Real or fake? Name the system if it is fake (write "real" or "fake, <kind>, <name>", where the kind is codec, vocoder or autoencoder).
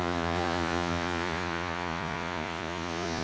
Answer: fake, vocoder, Vocos